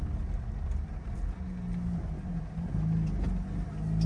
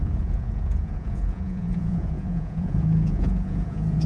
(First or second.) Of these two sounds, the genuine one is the first